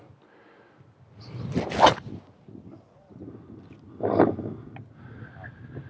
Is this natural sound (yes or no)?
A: yes